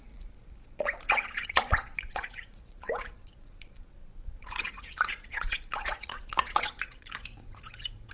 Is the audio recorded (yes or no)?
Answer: no